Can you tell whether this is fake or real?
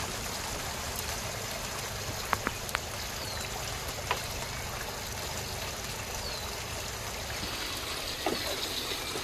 real